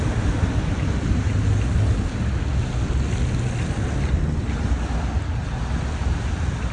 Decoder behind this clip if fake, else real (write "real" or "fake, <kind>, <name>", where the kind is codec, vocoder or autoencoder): real